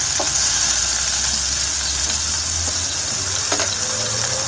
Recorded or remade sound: recorded